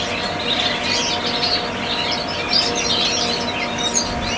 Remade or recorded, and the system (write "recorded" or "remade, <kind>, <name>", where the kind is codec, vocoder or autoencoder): recorded